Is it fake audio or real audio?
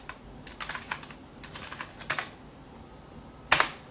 real